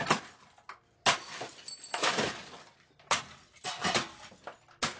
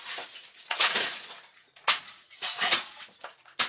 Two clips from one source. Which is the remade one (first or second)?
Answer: second